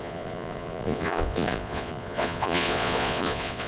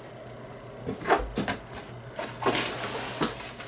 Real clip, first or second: second